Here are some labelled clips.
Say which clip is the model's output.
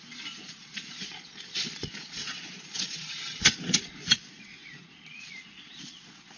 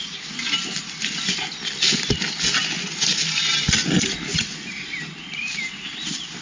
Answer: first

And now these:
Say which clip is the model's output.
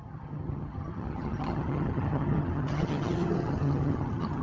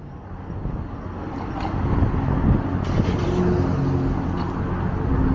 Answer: first